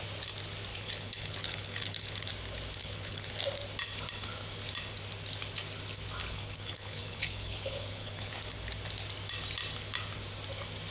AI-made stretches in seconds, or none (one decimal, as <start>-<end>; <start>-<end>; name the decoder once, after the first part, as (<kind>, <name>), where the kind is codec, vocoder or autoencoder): 0.7-2.3 (codec, HILCodec); 2.8-3.3; 6.2-8.3